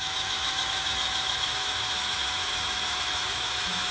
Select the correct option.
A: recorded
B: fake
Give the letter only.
B